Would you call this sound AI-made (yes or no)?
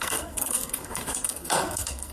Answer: yes